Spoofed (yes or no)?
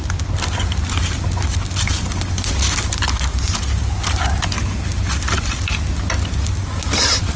no